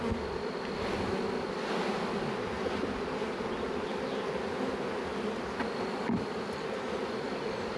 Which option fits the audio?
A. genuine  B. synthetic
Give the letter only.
A